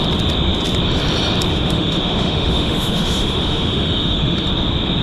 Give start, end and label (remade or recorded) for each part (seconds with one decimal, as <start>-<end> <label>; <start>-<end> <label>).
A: 0.0-1.5 recorded; 1.5-4.5 remade; 4.5-5.0 recorded